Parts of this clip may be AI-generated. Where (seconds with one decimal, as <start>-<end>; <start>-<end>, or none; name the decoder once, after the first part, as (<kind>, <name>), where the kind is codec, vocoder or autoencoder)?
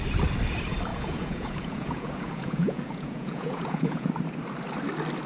0.9-4.1 (vocoder, Vocos)